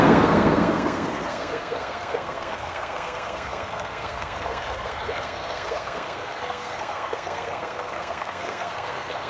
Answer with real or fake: fake